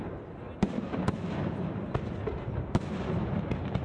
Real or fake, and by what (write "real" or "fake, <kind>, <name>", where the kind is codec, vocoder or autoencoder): real